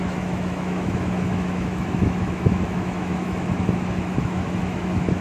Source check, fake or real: fake